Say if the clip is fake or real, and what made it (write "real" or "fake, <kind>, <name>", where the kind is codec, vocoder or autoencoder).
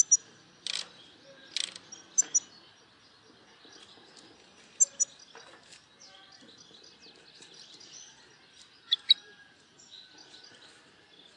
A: real